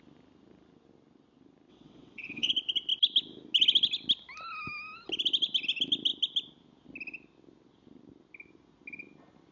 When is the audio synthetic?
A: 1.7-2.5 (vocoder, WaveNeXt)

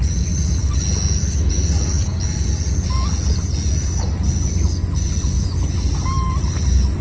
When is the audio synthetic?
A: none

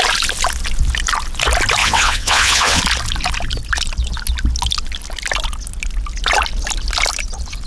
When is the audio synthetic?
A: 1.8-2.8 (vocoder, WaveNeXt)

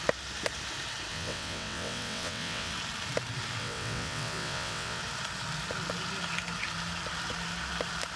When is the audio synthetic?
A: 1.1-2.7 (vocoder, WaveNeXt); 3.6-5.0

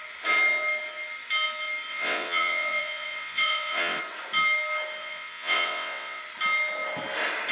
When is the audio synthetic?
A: 1.9-4.0 (vocoder, WaveNeXt); 5.0-6.2

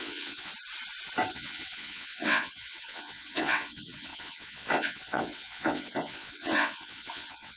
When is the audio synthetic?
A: 0.0-0.5 (vocoder, WaveNeXt); 1.3-7.6